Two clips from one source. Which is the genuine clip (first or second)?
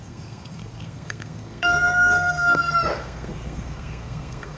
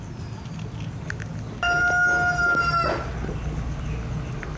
second